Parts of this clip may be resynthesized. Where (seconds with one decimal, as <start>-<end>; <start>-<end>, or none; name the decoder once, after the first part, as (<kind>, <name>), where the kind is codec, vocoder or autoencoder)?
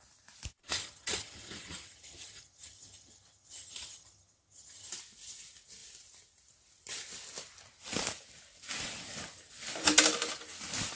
0.6-4.9 (vocoder, HiFi-GAN)